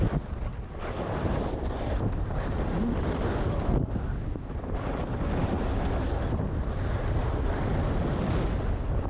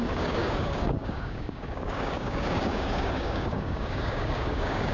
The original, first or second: first